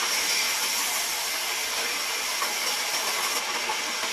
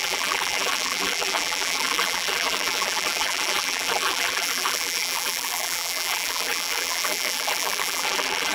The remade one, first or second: second